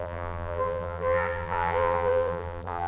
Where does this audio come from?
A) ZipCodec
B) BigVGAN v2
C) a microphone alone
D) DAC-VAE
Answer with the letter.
B